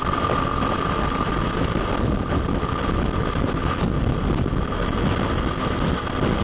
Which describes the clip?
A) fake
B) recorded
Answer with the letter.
B